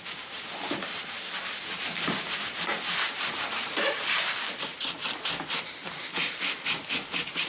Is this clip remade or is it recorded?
remade